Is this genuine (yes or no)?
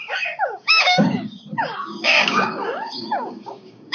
no